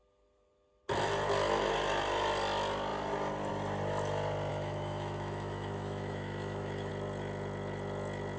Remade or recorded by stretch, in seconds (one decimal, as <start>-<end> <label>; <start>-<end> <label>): 0.0-4.5 recorded; 4.5-6.9 remade; 6.9-8.4 recorded